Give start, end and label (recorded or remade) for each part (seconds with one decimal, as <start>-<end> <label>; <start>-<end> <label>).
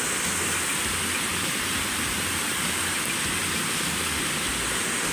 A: 0.0-1.3 recorded; 1.3-2.8 remade; 2.8-3.4 recorded; 3.4-4.5 remade; 4.5-5.1 recorded